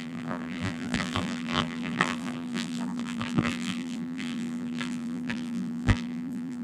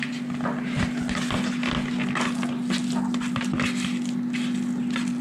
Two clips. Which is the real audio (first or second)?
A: second